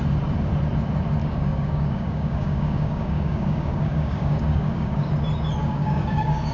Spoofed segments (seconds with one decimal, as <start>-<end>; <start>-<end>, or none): 1.2-5.1; 5.6-6.5